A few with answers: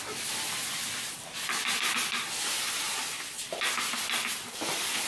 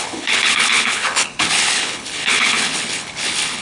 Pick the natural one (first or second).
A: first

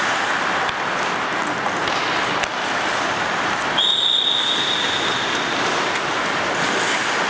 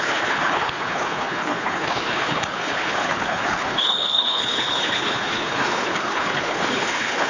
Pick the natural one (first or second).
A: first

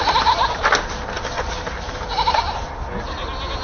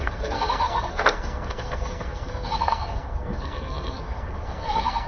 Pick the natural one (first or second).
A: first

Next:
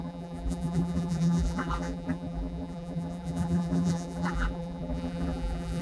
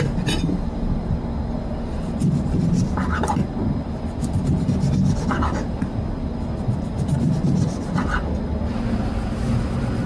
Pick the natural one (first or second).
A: second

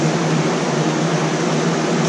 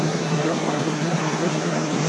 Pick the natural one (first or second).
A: first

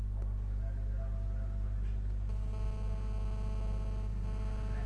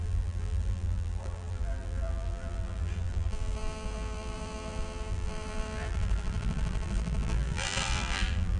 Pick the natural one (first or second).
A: first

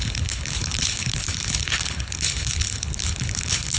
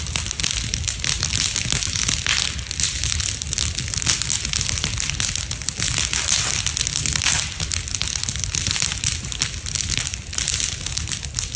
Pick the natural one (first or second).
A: second